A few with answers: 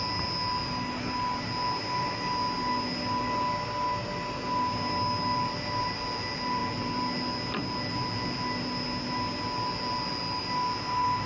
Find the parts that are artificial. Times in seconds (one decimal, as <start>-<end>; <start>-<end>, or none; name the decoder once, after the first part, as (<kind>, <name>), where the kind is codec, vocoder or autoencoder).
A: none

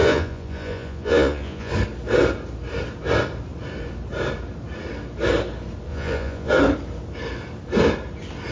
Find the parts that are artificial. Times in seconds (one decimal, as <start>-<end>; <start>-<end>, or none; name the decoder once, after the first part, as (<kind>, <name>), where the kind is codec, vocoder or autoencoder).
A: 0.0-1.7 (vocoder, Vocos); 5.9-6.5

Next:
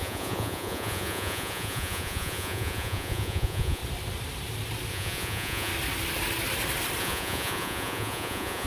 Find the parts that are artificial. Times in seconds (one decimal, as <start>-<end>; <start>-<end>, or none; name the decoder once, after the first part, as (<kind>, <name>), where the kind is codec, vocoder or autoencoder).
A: 0.0-3.8 (vocoder, Vocos); 4.9-5.7; 7.0-8.7